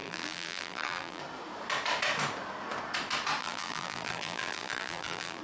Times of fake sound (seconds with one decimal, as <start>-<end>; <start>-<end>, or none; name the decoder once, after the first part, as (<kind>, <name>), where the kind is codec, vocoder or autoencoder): 0.0-1.2 (vocoder, BigVGAN v2); 3.4-5.4